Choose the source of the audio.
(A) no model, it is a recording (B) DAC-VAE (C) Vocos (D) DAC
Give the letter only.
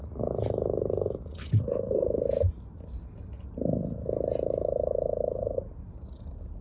A